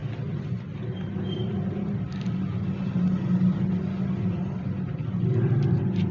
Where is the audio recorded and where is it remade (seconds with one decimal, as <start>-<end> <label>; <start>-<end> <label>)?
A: 0.0-6.1 recorded